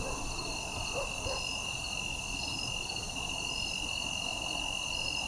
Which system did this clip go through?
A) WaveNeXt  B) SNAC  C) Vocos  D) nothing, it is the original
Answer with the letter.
D